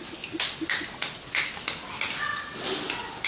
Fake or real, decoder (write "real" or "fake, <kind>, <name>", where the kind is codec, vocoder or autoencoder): real